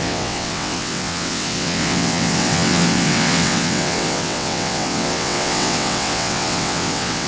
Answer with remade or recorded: remade